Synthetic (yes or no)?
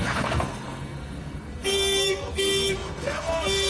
yes